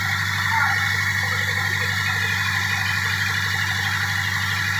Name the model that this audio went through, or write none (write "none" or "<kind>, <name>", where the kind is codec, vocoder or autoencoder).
none